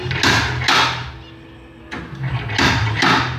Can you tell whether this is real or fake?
real